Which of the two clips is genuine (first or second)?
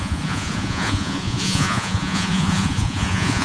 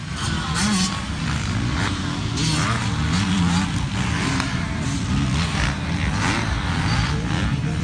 second